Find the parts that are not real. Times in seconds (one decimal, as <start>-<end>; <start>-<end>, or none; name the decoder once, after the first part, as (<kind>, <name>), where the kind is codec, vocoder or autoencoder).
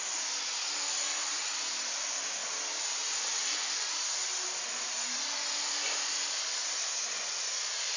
none